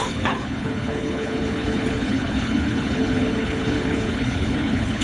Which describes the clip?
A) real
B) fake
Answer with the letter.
B